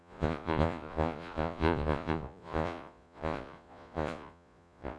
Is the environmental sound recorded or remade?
remade